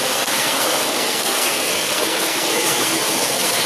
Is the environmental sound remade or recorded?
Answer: remade